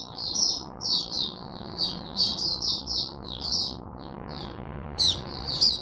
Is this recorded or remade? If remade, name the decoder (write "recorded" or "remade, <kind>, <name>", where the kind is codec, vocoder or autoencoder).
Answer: remade, vocoder, WaveNeXt